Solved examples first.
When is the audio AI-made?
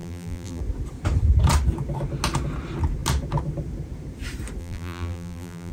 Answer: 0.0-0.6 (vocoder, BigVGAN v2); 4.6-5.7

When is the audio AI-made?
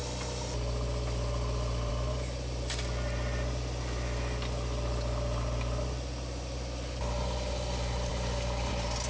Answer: none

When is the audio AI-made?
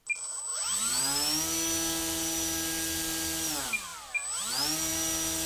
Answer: 0.5-1.0 (vocoder, BigVGAN v2)